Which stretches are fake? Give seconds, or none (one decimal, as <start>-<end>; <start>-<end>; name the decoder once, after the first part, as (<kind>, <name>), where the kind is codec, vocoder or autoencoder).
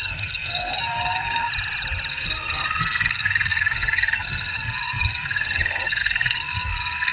0.0-1.5 (codec, SNAC); 2.1-7.1